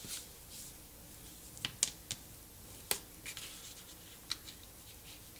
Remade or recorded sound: recorded